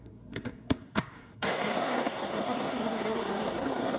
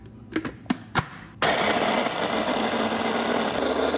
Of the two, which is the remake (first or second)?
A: first